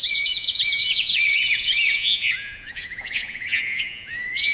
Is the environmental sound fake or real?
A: fake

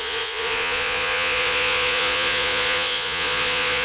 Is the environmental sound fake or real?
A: fake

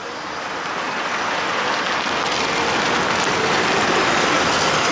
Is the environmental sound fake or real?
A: real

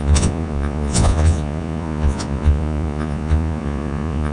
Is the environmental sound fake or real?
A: fake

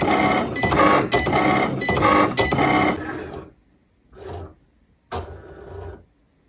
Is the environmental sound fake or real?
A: real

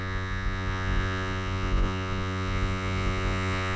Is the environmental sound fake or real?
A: fake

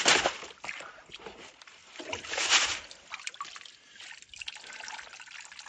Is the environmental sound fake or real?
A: real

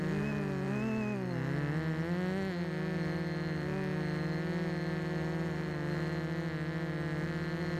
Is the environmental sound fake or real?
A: real